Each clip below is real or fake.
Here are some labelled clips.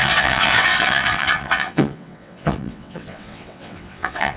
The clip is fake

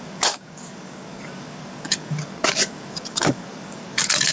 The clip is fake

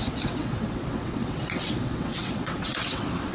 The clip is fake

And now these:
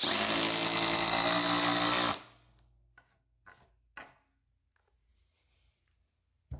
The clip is real